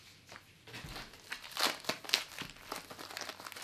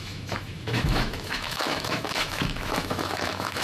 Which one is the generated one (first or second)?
second